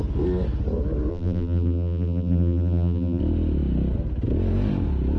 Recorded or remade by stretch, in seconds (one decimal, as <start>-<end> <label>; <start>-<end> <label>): 0.0-1.1 recorded; 1.1-3.2 remade; 3.2-5.2 recorded